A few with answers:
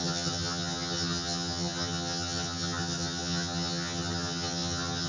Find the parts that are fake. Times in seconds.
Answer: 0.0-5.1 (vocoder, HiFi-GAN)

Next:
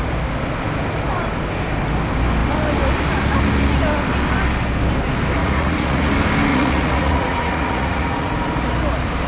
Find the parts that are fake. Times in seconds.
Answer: 5.4-6.1 (vocoder, Vocos); 6.5-8.3